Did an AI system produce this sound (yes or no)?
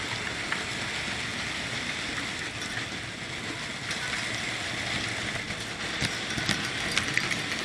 no